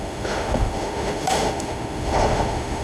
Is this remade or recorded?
remade